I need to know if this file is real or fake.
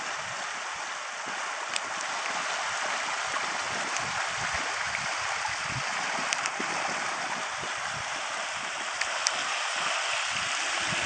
real